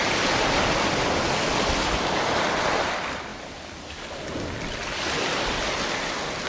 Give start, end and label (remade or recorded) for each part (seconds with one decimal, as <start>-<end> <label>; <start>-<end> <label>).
0.0-6.5 recorded

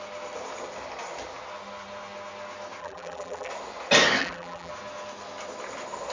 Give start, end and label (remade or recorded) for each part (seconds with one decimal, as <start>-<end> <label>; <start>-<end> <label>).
0.0-2.8 recorded; 2.8-3.5 remade; 3.5-4.2 recorded; 4.2-4.7 remade; 4.7-6.1 recorded

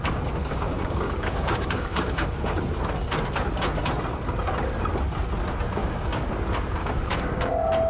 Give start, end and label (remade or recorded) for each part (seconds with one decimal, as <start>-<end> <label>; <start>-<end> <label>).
0.0-0.4 recorded; 0.4-2.6 remade; 2.6-5.8 recorded; 5.8-6.3 remade; 6.3-6.8 recorded; 6.8-7.5 remade; 7.5-7.9 recorded

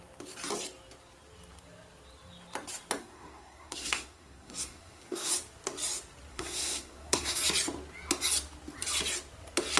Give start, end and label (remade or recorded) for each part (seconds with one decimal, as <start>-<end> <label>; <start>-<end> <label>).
0.0-3.0 recorded; 3.0-5.3 remade; 5.3-6.3 recorded; 6.3-7.4 remade; 7.4-9.8 recorded

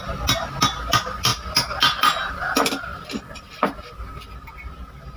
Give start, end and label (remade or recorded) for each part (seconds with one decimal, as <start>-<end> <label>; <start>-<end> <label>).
0.0-5.2 recorded

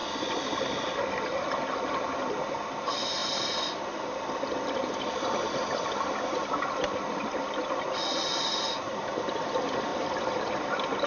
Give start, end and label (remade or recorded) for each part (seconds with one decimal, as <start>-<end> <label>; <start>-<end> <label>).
0.0-3.2 recorded; 3.2-3.8 remade; 3.8-9.9 recorded; 9.9-10.5 remade; 10.5-11.1 recorded

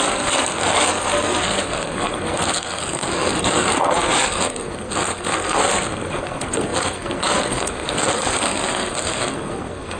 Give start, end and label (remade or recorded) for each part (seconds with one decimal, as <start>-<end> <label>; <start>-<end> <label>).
0.0-10.0 remade